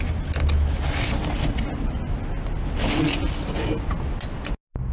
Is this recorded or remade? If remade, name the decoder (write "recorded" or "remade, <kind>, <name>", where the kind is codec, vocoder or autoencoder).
recorded